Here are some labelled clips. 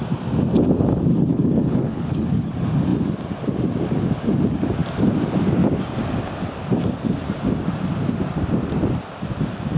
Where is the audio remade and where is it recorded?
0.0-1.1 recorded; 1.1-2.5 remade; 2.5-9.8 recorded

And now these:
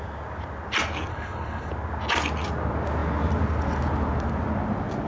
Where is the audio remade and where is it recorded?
0.0-1.1 recorded; 1.1-1.7 remade; 1.7-5.1 recorded